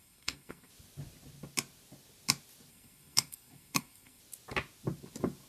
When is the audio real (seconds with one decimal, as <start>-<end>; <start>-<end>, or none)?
0.7-2.7; 4.2-5.5